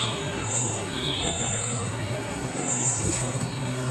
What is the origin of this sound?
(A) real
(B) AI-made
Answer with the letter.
B